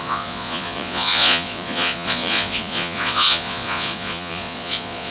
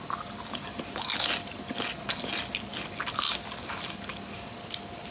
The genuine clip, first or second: second